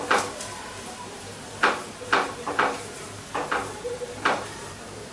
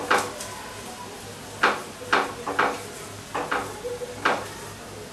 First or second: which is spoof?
first